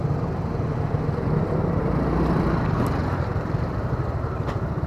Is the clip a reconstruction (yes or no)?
yes